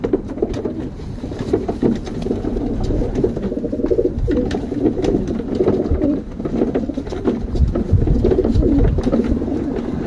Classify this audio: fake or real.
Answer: real